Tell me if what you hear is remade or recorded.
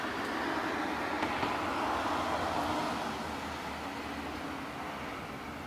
recorded